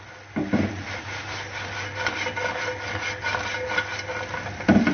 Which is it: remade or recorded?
recorded